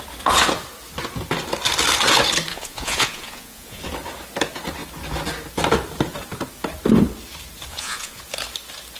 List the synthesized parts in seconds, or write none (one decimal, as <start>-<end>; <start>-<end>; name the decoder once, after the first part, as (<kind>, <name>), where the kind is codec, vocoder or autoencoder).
2.5-3.8 (vocoder, Vocos); 7.7-8.2